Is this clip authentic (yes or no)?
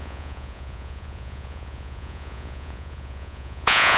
no